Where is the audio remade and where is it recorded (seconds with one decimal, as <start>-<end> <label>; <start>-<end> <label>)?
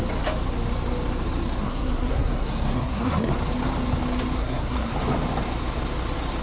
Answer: 0.0-1.6 recorded; 1.6-3.3 remade; 3.3-4.4 recorded; 4.4-4.9 remade; 4.9-6.4 recorded